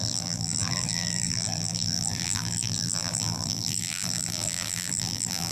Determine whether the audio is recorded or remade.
remade